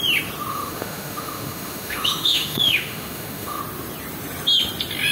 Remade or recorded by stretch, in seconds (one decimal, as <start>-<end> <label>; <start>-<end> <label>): 0.0-0.5 recorded; 0.5-3.6 remade; 3.6-5.1 recorded